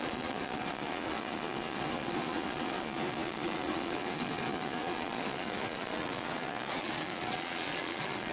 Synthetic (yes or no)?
yes